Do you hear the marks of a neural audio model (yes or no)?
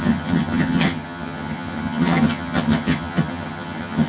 yes